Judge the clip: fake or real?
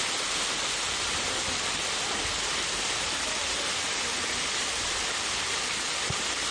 real